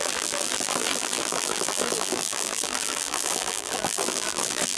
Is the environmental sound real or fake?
fake